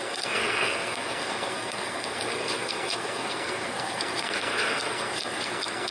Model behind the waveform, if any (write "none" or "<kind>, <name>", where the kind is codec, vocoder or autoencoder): codec, SNAC